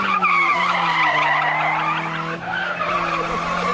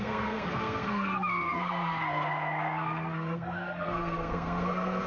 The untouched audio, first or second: first